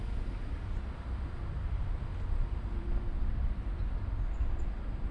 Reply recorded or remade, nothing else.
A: remade